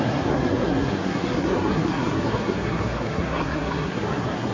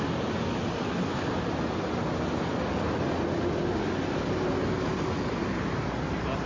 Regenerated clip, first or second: first